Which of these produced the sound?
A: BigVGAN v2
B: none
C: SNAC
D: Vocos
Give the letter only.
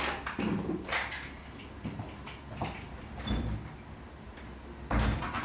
B